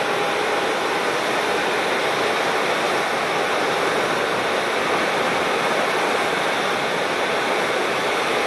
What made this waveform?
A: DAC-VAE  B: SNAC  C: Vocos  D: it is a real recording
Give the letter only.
D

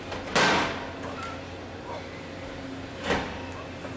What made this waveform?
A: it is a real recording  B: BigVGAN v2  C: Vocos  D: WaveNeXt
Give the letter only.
A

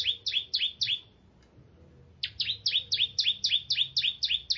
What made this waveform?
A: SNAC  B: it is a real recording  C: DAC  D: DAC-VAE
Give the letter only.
B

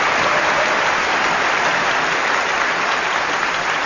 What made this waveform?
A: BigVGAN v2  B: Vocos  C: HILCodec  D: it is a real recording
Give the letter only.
D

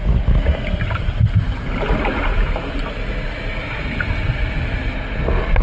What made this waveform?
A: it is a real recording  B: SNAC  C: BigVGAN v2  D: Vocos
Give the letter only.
A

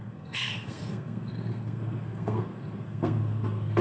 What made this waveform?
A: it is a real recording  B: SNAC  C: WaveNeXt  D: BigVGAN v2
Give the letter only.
B